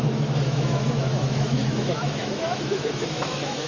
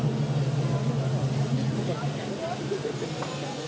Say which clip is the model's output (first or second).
first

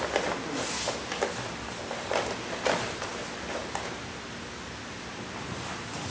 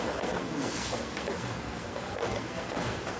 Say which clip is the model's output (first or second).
second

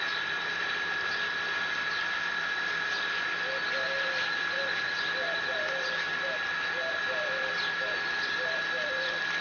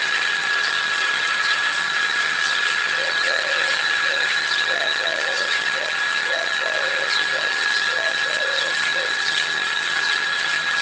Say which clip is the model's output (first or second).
second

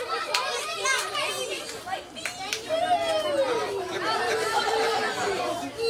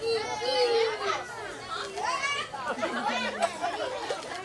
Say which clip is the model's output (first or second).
first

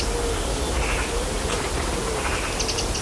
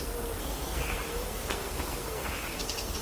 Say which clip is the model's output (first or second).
second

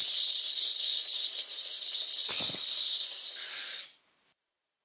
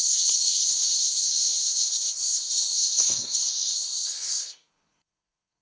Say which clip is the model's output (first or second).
second